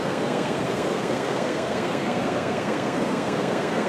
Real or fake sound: fake